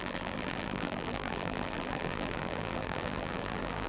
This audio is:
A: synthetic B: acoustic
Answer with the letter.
A